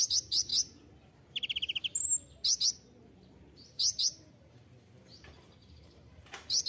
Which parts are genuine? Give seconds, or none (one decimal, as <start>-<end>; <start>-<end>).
0.5-3.7